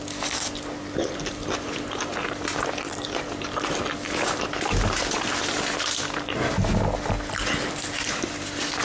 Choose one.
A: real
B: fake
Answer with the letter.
A